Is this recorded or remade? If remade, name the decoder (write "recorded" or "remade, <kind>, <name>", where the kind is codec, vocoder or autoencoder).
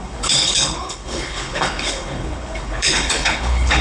remade, codec, HILCodec